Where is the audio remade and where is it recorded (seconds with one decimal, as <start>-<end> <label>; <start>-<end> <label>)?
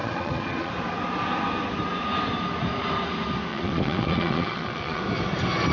0.0-0.7 remade; 0.7-3.5 recorded; 3.5-5.0 remade; 5.0-5.7 recorded